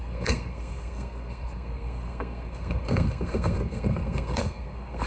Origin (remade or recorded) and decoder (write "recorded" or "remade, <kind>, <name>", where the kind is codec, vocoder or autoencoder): remade, codec, SNAC